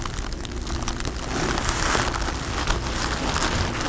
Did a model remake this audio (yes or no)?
no